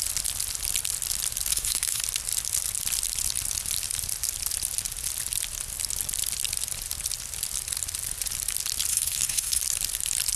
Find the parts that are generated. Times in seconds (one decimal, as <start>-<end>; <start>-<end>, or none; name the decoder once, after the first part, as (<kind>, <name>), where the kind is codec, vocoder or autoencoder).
1.5-2.0 (codec, SNAC); 8.9-9.6